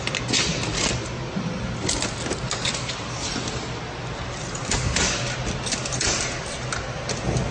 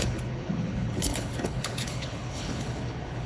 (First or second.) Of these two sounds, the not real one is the second